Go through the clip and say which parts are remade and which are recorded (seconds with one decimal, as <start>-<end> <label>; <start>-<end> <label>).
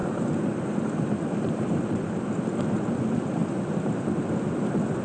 0.0-5.0 recorded